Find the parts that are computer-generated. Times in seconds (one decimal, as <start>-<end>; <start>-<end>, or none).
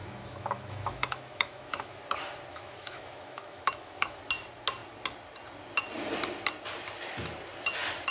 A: 0.0-2.0; 2.5-4.2